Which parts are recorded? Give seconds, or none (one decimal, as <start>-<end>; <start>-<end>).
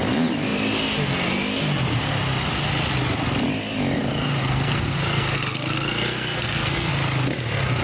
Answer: 0.0-4.4; 6.9-7.8